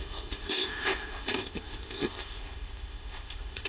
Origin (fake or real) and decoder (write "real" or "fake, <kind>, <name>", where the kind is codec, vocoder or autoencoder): fake, codec, ZipCodec